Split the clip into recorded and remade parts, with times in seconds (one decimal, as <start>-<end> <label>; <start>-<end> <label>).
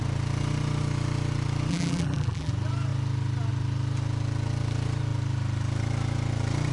0.0-1.7 recorded; 1.7-2.5 remade; 2.5-6.7 recorded